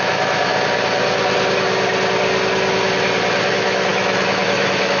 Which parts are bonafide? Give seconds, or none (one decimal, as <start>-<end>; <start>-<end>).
0.5-3.5